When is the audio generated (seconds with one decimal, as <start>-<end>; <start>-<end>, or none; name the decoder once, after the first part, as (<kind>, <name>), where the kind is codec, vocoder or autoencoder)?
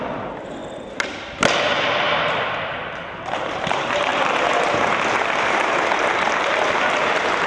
0.0-0.6 (vocoder, BigVGAN v2); 2.2-7.5